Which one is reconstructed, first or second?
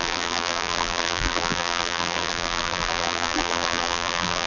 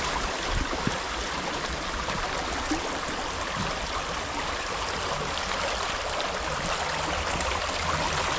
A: first